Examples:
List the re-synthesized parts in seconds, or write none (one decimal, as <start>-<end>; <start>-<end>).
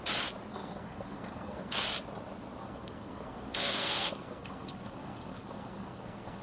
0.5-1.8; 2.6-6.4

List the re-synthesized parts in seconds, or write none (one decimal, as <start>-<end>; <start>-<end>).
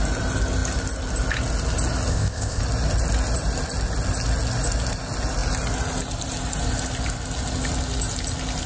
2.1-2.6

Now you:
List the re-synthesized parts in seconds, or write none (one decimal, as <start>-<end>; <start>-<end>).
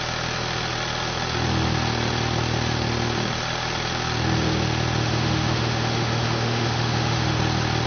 5.0-7.4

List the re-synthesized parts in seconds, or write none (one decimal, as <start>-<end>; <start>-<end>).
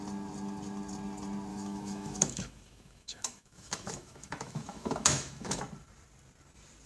1.5-5.6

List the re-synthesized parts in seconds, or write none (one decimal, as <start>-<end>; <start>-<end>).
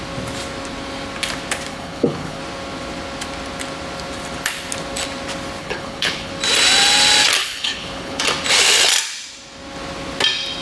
1.7-2.4; 5.6-6.3; 7.4-8.2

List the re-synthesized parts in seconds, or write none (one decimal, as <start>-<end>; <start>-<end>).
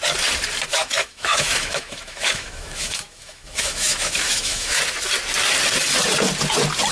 0.7-4.8